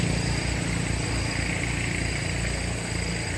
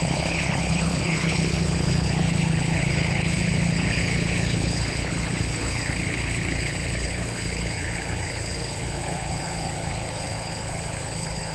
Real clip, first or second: first